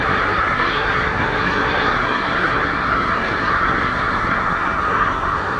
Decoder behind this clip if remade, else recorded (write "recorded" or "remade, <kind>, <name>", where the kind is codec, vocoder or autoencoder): remade, codec, SNAC